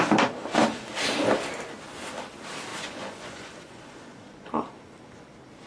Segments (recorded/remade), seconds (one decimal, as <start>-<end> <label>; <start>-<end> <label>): 0.0-2.7 recorded; 2.7-4.5 remade; 4.5-5.7 recorded